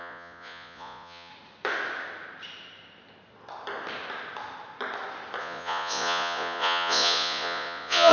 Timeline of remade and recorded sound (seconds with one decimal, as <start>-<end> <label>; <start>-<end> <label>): 0.0-1.3 remade; 1.3-5.4 recorded; 5.4-8.1 remade